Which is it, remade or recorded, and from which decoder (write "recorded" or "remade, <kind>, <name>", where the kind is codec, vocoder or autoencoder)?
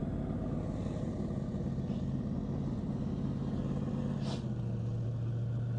recorded